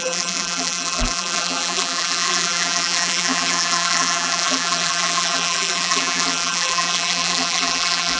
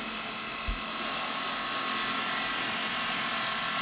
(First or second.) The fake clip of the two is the first